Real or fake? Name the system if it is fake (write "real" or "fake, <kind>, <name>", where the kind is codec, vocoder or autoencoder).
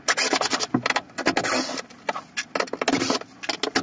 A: real